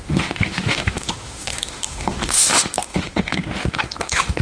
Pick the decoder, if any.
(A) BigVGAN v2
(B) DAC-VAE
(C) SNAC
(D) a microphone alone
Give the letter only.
B